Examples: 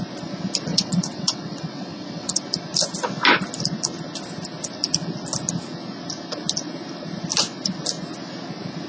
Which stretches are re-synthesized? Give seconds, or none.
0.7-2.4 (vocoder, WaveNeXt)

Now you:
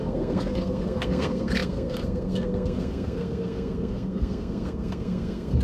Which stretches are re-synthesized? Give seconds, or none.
0.0-5.6 (codec, SNAC)

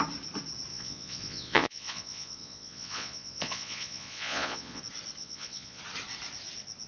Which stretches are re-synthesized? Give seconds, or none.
0.7-4.8 (vocoder, Vocos); 5.2-5.8

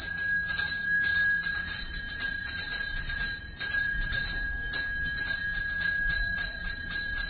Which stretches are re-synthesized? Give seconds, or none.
0.8-4.5 (vocoder, BigVGAN v2); 6.1-7.3

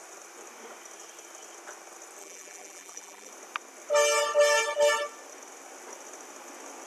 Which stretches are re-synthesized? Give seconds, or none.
2.2-3.3 (vocoder, BigVGAN v2)